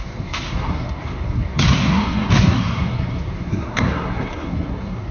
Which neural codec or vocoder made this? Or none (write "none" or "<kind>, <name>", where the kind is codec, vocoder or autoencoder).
codec, SNAC